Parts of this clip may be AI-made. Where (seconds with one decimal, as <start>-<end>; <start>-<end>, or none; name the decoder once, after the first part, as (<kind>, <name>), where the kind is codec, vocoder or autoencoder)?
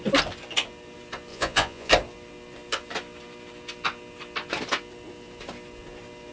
1.3-1.9 (vocoder, Vocos)